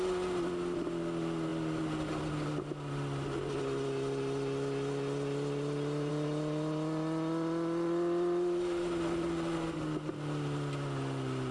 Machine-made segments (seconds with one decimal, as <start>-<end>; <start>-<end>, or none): none